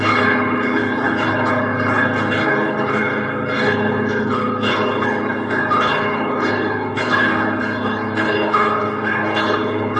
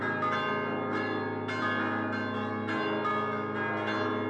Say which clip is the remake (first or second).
first